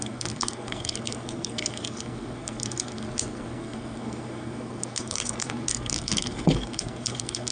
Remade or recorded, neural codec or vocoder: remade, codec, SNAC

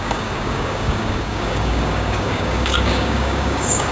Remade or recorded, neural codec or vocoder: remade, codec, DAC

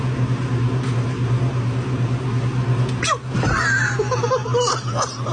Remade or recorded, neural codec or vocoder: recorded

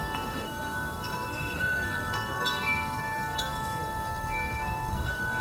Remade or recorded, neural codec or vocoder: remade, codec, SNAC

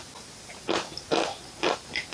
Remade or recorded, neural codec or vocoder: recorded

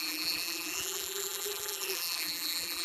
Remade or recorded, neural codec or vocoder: remade, vocoder, BigVGAN v2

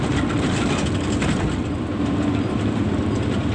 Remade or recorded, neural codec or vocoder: recorded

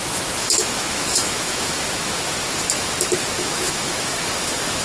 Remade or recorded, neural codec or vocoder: remade, autoencoder, DAC-VAE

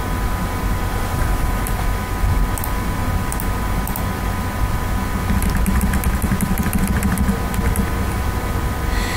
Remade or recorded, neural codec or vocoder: recorded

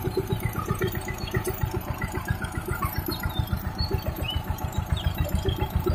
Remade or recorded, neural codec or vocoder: remade, vocoder, BigVGAN v2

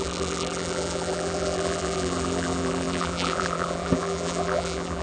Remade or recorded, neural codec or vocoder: remade, vocoder, BigVGAN v2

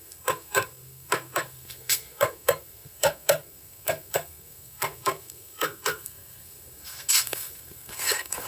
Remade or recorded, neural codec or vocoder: remade, codec, SNAC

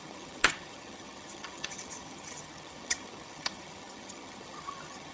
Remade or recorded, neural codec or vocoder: remade, vocoder, HiFi-GAN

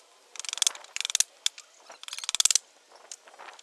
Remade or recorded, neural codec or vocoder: recorded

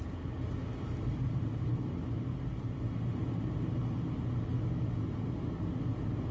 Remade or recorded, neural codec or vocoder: recorded